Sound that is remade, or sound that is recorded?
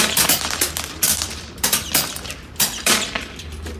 remade